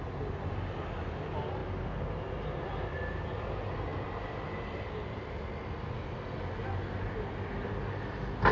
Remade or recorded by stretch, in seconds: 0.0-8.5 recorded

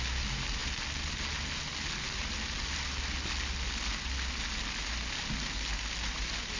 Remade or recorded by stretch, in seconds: 0.0-6.6 recorded

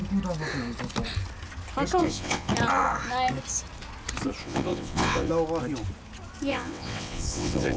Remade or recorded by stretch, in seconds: 0.0-2.0 recorded; 2.0-2.5 remade; 2.5-4.4 recorded; 4.4-5.3 remade; 5.3-6.5 recorded; 6.5-7.8 remade

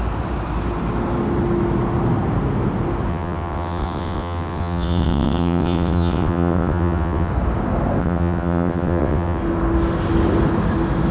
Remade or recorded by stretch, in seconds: 0.0-3.1 recorded; 3.1-7.3 remade; 7.3-8.0 recorded; 8.0-9.4 remade; 9.4-11.1 recorded

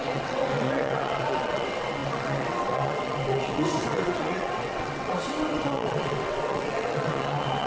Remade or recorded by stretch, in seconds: 0.0-7.7 remade

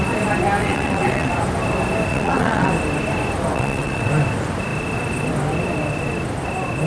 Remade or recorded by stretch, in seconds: 0.0-0.6 recorded; 0.6-1.3 remade; 1.3-2.1 recorded; 2.1-2.7 remade; 2.7-3.5 recorded; 3.5-4.1 remade; 4.1-6.9 recorded